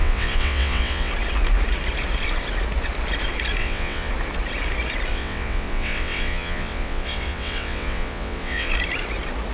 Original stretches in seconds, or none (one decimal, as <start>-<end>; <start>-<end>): 1.1-3.6; 4.1-5.1; 8.7-9.5